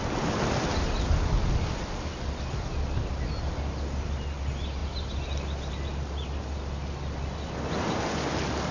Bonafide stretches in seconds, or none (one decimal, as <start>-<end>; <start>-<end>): 0.0-8.7